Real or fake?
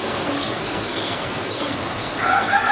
fake